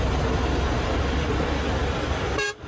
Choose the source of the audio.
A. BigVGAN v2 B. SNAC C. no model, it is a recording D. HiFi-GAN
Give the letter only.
C